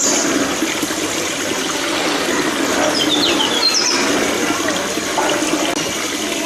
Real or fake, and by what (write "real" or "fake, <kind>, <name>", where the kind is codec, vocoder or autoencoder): real